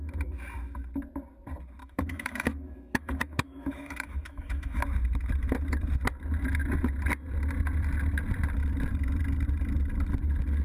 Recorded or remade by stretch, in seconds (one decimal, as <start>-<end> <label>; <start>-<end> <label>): 0.0-1.8 recorded; 1.8-4.8 remade; 4.8-10.6 recorded